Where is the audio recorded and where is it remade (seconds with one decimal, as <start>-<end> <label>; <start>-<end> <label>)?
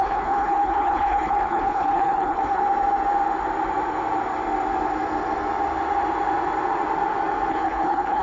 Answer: 0.0-2.6 remade; 2.6-7.5 recorded; 7.5-8.2 remade